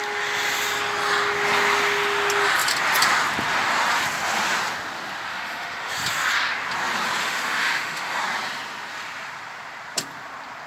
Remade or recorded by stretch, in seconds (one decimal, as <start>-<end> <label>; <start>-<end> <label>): 0.0-5.3 recorded; 5.3-5.9 remade; 5.9-7.2 recorded; 7.2-8.2 remade; 8.2-10.7 recorded